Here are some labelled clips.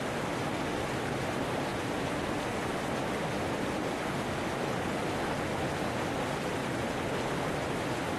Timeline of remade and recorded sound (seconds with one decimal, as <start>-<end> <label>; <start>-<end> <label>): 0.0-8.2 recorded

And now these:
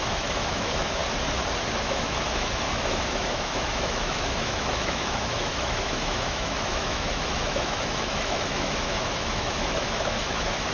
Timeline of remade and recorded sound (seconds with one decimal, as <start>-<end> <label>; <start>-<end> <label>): 0.0-1.0 remade; 1.0-1.8 recorded; 1.8-10.7 remade

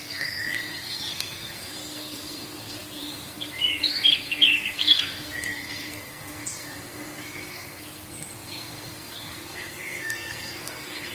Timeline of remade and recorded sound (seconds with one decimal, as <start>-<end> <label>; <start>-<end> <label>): 0.0-11.1 remade

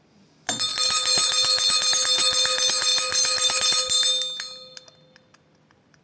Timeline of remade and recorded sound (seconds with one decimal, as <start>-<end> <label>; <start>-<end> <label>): 0.0-6.0 recorded

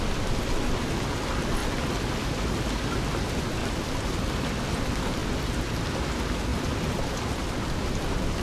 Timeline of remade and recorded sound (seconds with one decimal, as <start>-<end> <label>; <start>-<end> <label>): 0.0-3.6 recorded; 3.6-4.3 remade; 4.3-6.5 recorded; 6.5-7.1 remade; 7.1-8.4 recorded